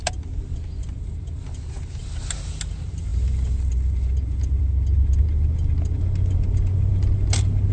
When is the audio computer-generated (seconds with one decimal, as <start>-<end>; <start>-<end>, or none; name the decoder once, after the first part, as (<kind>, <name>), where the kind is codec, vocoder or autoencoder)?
none